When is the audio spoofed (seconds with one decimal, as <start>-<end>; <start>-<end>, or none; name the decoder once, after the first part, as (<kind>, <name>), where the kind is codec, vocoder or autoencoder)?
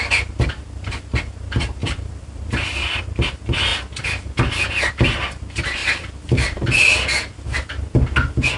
1.8-3.0 (vocoder, BigVGAN v2); 5.8-6.6